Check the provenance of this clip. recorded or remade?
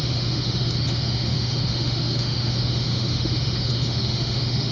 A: remade